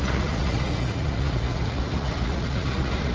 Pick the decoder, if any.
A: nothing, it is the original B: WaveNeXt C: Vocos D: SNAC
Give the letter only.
C